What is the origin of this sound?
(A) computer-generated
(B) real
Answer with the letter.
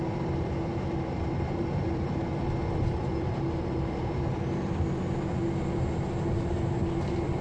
A